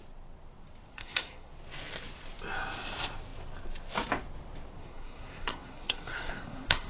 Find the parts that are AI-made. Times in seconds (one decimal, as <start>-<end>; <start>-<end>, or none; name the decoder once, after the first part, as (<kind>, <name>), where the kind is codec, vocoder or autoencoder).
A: 0.9-1.5 (codec, SNAC); 4.8-6.9